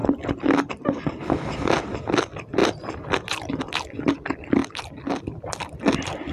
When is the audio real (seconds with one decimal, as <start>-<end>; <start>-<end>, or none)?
0.0-4.6; 5.2-6.3